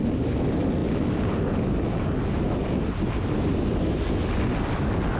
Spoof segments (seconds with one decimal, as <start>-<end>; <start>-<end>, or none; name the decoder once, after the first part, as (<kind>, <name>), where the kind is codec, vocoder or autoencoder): none